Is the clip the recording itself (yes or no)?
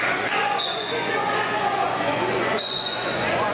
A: no